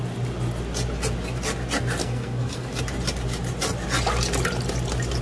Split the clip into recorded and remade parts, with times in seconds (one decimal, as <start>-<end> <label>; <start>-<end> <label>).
0.0-2.0 recorded; 2.0-2.7 remade; 2.7-5.2 recorded